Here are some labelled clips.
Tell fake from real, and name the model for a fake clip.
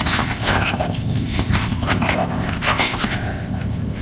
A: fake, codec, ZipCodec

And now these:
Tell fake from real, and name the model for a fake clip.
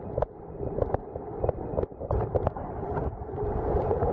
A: real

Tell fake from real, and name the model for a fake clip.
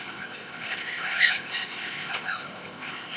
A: fake, codec, ZipCodec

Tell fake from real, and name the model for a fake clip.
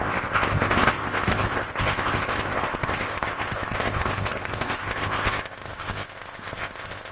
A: fake, codec, ZipCodec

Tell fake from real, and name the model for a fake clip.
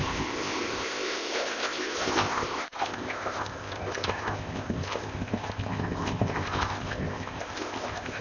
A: fake, codec, ZipCodec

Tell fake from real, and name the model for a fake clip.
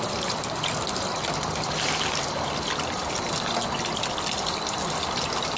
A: real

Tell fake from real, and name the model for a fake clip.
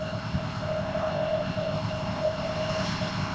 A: fake, codec, ZipCodec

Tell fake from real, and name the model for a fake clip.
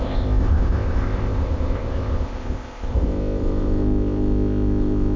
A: fake, codec, ZipCodec